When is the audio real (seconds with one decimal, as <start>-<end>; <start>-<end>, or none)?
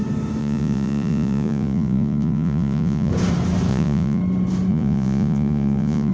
0.0-0.4; 3.1-3.7; 4.2-4.7